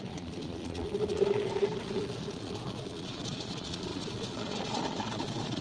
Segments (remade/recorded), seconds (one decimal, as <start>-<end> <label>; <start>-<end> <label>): 0.0-5.6 remade